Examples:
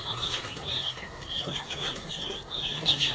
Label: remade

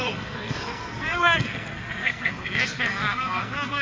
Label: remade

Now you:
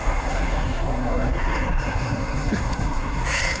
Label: remade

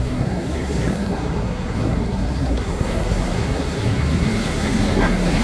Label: remade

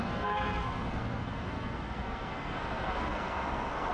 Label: remade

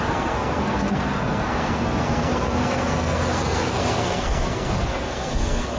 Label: remade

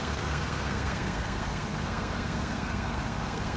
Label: remade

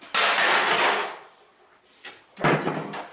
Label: recorded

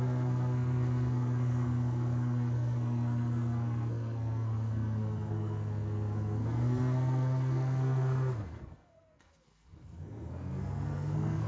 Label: remade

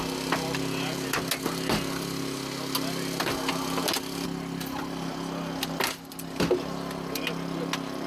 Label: recorded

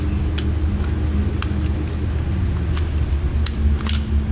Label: recorded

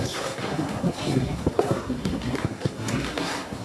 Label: remade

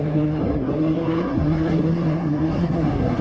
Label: remade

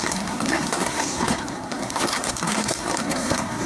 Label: remade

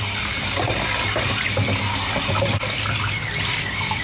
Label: recorded